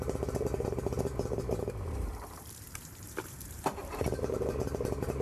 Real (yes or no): no